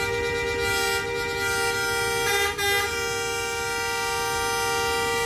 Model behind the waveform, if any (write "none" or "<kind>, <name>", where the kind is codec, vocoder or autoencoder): none